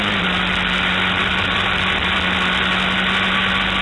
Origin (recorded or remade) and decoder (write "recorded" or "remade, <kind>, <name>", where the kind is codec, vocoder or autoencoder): recorded